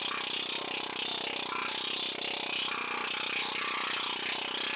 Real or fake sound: real